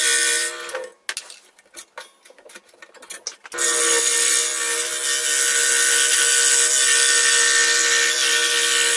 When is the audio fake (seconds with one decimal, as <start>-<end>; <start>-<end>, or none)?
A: none